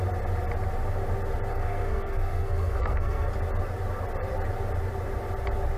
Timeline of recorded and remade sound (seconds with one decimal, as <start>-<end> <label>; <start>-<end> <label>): 0.0-1.5 recorded; 1.5-3.3 remade; 3.3-5.8 recorded